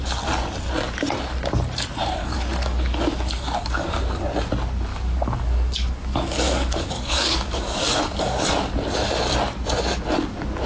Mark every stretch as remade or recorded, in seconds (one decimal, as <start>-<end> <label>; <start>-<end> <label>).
0.0-2.2 recorded; 2.2-4.0 remade; 4.0-4.9 recorded; 4.9-8.4 remade; 8.4-10.7 recorded

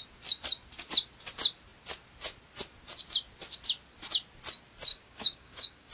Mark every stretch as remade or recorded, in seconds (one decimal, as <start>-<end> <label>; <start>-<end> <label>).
0.0-4.9 recorded; 4.9-5.9 remade

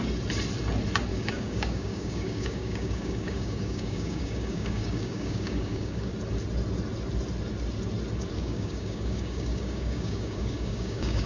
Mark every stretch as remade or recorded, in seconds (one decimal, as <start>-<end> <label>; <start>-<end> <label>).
0.0-1.1 recorded; 1.1-6.1 remade; 6.1-8.4 recorded; 8.4-11.3 remade

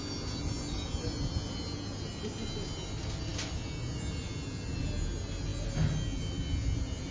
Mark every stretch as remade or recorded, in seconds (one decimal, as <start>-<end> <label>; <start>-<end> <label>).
0.0-7.1 recorded

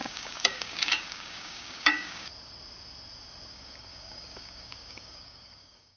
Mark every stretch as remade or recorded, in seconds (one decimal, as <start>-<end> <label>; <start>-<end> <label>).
0.0-2.3 remade; 2.3-3.5 recorded; 3.5-6.0 remade